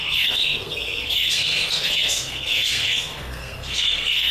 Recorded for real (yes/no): no